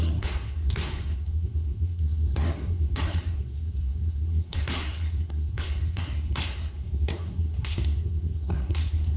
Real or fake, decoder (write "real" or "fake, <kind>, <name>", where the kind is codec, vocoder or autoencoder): fake, codec, SNAC